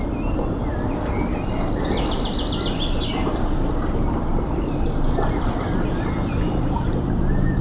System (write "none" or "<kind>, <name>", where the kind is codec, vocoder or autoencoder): none